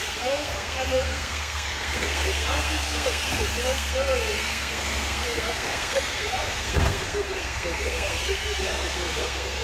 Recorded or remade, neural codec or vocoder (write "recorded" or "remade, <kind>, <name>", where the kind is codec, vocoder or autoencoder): remade, codec, SNAC